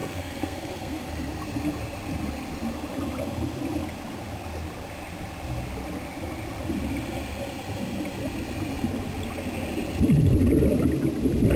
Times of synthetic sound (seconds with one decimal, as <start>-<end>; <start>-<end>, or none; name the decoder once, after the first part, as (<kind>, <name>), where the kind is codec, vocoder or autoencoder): 0.0-1.1 (codec, SNAC)